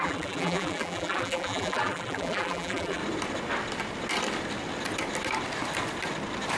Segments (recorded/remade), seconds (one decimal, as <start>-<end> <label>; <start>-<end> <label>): 0.0-3.0 remade; 3.0-6.6 recorded